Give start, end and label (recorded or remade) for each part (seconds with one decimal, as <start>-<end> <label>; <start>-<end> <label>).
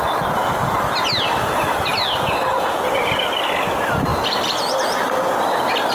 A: 0.0-5.9 recorded